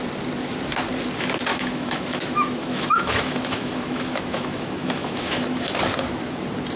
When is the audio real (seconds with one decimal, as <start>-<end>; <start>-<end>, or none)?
0.0-1.5; 5.6-6.8